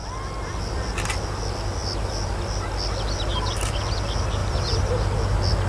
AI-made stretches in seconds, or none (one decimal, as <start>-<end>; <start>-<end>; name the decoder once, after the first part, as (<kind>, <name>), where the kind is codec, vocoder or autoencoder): 4.4-4.9 (vocoder, BigVGAN v2)

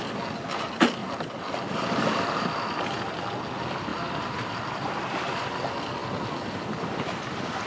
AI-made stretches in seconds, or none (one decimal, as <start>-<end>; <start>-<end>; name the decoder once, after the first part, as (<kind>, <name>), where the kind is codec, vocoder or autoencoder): 1.0-3.4 (vocoder, BigVGAN v2); 3.9-4.6; 6.0-7.2

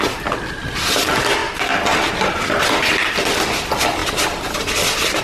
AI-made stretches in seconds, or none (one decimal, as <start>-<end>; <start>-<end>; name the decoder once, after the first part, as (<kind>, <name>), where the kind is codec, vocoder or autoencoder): none

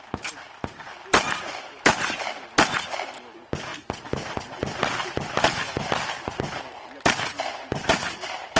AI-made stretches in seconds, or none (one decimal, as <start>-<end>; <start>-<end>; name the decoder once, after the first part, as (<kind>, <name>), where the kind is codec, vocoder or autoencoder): none

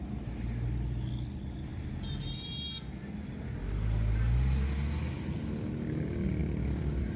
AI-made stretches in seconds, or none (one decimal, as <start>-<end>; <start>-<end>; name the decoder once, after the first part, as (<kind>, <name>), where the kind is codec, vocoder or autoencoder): 1.7-2.9 (vocoder, BigVGAN v2); 6.4-7.2

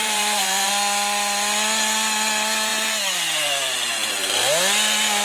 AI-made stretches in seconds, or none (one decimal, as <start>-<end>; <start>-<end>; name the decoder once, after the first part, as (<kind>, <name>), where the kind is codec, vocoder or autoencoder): 0.0-0.7 (vocoder, BigVGAN v2)

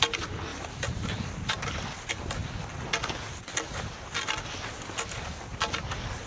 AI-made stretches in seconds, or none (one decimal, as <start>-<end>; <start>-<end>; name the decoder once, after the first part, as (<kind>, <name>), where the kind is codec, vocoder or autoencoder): 0.5-1.6 (vocoder, BigVGAN v2)